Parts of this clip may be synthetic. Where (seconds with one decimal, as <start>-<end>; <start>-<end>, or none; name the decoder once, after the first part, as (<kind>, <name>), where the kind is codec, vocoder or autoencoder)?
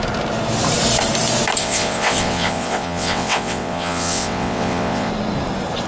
1.6-5.1 (vocoder, WaveNeXt)